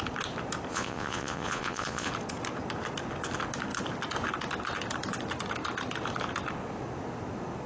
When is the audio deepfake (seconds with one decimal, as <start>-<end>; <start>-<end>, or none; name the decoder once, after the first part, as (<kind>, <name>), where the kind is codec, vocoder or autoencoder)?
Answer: 0.7-2.1 (vocoder, Vocos)